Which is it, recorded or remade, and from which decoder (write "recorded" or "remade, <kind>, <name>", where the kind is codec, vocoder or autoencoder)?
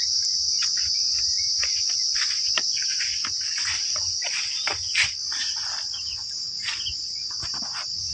recorded